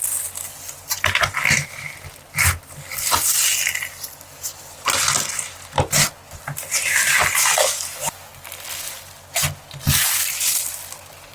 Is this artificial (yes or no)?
no